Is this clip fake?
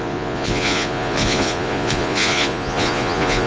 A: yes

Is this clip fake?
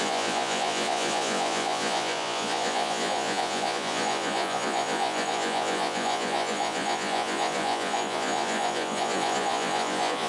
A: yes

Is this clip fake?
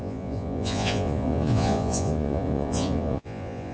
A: yes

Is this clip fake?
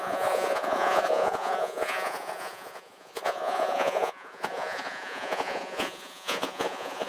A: yes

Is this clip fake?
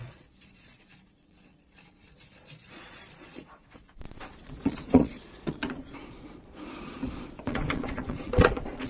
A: yes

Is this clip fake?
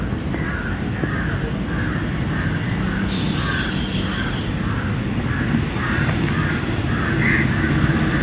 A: no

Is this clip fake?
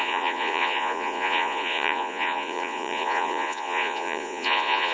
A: yes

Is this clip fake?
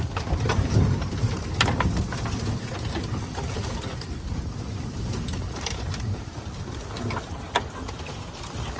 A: no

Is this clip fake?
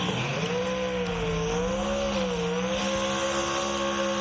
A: no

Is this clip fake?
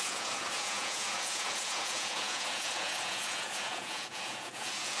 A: yes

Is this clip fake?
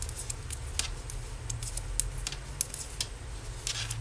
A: no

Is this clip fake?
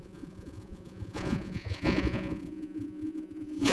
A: yes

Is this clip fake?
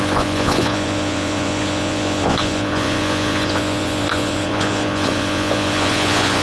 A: yes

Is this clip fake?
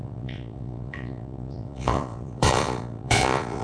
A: yes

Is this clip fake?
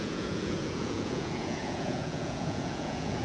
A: yes